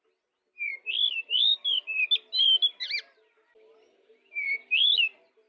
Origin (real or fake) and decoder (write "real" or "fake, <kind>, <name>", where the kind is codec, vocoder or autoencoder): real